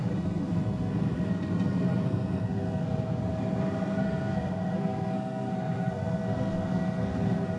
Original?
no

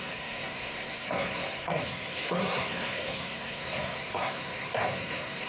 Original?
no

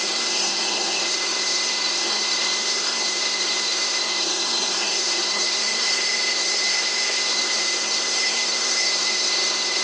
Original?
no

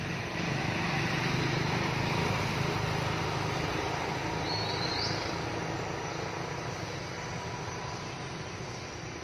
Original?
yes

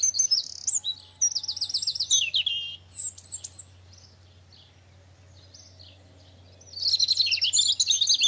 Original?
yes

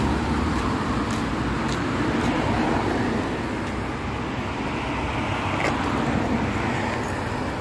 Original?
yes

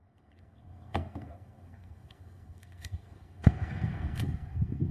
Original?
no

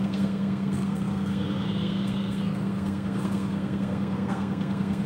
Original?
no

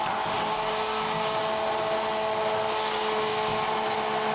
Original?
yes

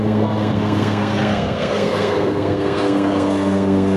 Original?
no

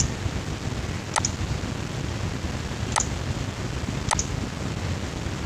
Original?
yes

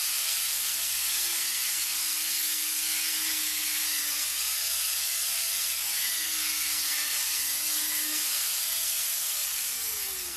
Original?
no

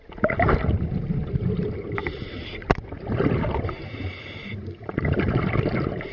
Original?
yes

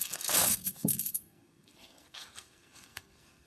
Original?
no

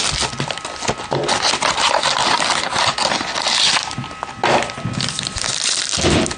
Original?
yes